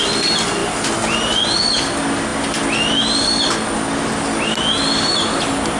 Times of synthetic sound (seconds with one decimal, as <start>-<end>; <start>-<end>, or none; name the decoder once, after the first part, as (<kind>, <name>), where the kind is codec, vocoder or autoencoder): none